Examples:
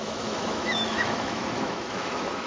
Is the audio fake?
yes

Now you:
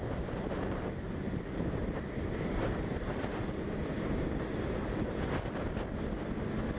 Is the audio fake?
no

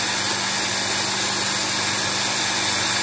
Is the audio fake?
no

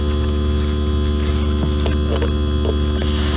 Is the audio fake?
no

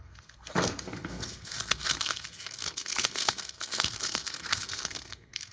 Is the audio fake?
yes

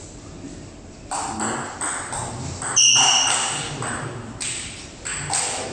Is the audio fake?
no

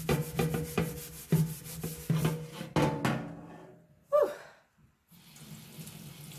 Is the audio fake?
no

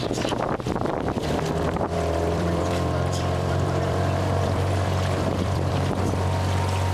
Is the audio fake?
yes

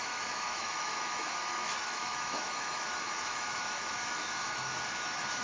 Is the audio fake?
yes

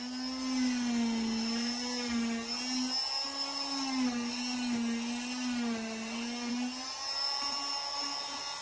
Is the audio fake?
no